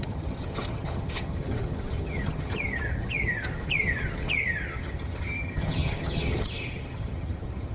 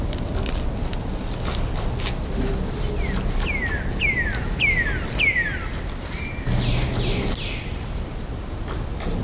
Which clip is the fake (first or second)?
first